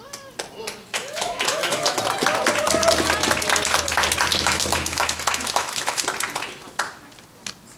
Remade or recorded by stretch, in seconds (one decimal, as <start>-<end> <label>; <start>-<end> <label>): 0.0-0.9 recorded; 0.9-2.0 remade; 2.0-4.3 recorded; 4.3-6.0 remade; 6.0-7.8 recorded